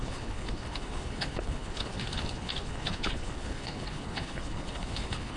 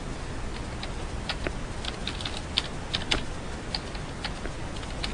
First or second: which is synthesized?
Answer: first